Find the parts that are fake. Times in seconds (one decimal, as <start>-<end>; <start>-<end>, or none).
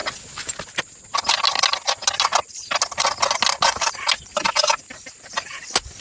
none